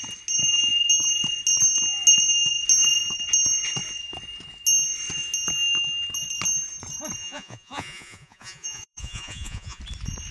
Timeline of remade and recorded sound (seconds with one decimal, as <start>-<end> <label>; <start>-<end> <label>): 0.0-7.2 recorded; 7.2-9.8 remade; 9.8-10.3 recorded

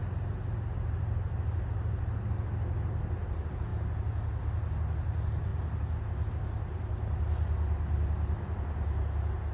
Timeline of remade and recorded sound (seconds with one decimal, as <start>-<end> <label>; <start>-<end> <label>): 0.0-9.5 recorded

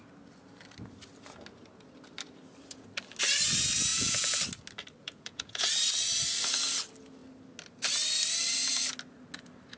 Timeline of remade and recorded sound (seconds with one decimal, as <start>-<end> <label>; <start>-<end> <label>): 0.0-3.9 recorded; 3.9-4.4 remade; 4.4-5.0 recorded; 5.0-5.7 remade; 5.7-9.8 recorded

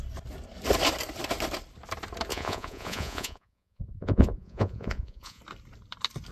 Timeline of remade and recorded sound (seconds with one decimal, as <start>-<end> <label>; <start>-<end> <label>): 0.0-2.3 recorded; 2.3-5.4 remade; 5.4-6.3 recorded

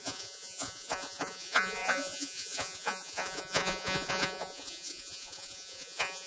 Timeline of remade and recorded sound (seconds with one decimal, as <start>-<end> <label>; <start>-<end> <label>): 0.0-6.3 remade

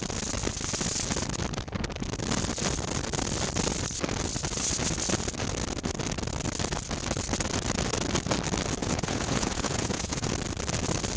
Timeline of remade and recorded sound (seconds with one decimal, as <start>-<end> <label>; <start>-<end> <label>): 0.0-8.8 recorded; 8.8-10.3 remade; 10.3-11.2 recorded